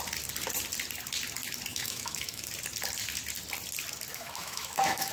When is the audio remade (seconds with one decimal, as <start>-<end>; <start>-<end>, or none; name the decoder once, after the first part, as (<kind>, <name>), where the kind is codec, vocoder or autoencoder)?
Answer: 1.7-2.5 (autoencoder, DAC-VAE); 4.1-5.1